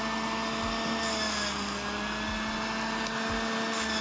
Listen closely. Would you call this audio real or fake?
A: real